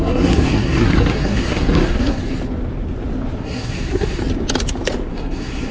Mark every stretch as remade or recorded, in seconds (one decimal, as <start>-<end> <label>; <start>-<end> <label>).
0.0-2.2 remade; 2.2-3.4 recorded; 3.4-4.2 remade; 4.2-5.1 recorded; 5.1-5.7 remade

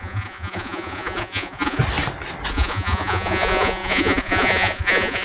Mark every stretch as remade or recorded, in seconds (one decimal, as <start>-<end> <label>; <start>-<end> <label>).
0.0-1.8 remade; 1.8-2.5 recorded; 2.5-5.2 remade